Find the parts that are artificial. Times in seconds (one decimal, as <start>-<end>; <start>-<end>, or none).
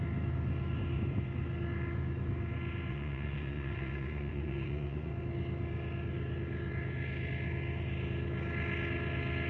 2.9-5.1